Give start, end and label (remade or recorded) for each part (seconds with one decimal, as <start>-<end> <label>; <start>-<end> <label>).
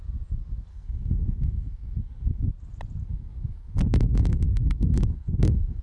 0.0-0.7 recorded; 0.7-2.5 remade; 2.5-3.0 recorded; 3.0-5.8 remade